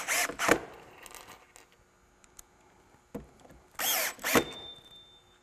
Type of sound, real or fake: real